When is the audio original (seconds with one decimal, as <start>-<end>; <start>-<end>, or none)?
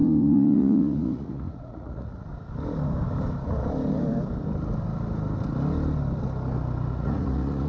2.3-6.9